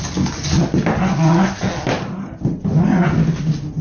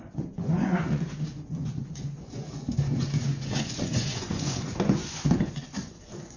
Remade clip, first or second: second